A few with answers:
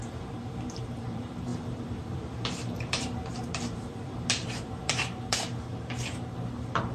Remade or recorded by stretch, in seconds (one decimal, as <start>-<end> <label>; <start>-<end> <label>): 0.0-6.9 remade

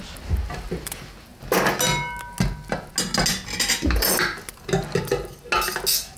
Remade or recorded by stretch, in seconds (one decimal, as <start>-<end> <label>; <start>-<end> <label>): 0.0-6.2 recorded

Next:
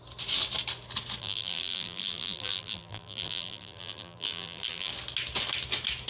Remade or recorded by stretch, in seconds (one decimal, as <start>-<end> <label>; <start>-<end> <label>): 0.0-1.2 recorded; 1.2-4.9 remade; 4.9-6.1 recorded

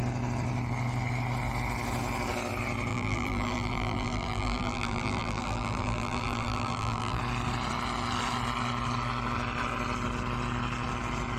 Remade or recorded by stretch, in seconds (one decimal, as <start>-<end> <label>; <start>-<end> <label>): 0.0-2.9 recorded; 2.9-7.2 remade; 7.2-11.4 recorded

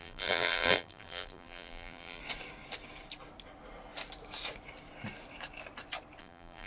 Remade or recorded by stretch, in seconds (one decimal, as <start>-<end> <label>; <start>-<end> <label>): 0.0-2.2 remade; 2.2-6.2 recorded; 6.2-6.7 remade

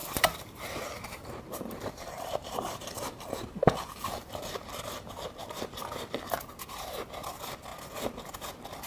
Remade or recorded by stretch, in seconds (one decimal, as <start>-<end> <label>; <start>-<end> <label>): 0.0-5.1 remade; 5.1-8.9 recorded